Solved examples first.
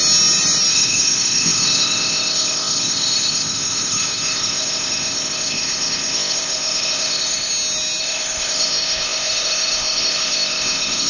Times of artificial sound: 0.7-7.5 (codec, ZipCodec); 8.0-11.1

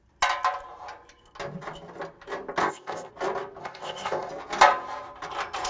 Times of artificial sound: 2.6-3.1 (codec, ZipCodec); 3.6-4.3

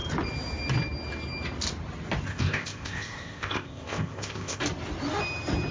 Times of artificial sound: 2.3-4.6 (codec, ZipCodec)

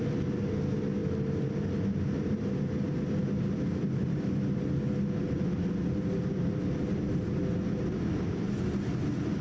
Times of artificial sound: none

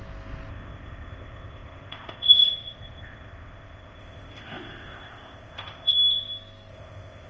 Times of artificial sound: 0.5-5.9 (codec, ZipCodec); 6.7-7.3

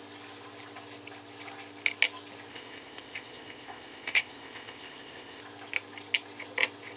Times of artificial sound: 2.5-5.4 (codec, ZipCodec)

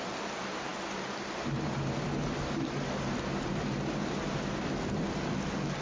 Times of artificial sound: none

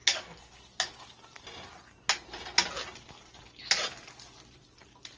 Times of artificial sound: none